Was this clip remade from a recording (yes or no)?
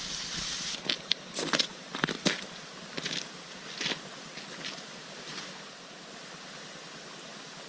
no